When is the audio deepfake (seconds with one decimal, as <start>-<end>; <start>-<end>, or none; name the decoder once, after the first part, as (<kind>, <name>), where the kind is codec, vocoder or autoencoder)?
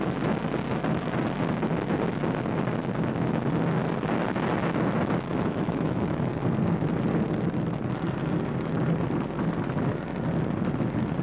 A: 5.3-6.3 (autoencoder, DAC-VAE)